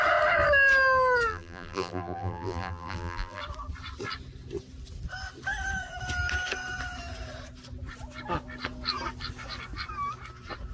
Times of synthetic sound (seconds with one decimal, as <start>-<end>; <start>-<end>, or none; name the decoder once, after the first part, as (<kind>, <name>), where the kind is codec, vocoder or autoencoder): 1.3-3.4 (vocoder, BigVGAN v2)